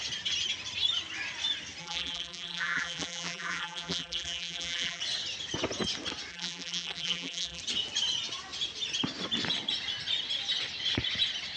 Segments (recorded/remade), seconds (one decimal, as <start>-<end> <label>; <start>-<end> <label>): 0.0-1.8 recorded; 1.8-5.0 remade; 5.0-6.3 recorded; 6.3-7.6 remade; 7.6-11.6 recorded